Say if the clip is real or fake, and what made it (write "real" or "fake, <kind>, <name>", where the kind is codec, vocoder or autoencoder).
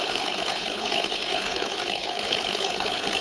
fake, codec, HILCodec